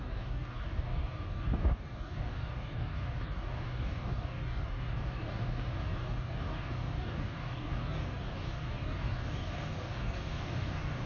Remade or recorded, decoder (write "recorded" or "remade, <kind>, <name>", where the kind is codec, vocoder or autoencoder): remade, codec, DAC